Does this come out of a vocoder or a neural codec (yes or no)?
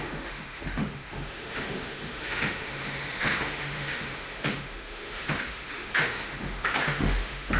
yes